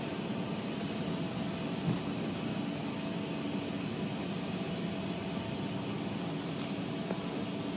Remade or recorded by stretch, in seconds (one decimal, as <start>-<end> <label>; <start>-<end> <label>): 0.0-7.8 recorded

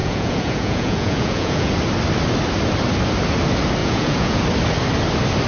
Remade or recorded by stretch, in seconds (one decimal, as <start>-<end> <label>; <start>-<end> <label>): 0.0-1.7 remade; 1.7-3.8 recorded; 3.8-4.4 remade; 4.4-5.5 recorded